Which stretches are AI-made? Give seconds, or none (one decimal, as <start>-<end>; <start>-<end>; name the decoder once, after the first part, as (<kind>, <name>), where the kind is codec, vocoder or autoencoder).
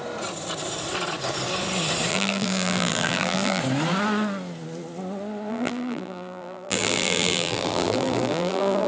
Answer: 2.1-3.6 (vocoder, BigVGAN v2); 5.5-8.9